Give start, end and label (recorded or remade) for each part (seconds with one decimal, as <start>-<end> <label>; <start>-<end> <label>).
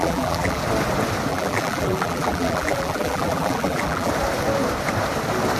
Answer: 0.0-0.6 remade; 0.6-1.3 recorded; 1.3-4.1 remade; 4.1-5.6 recorded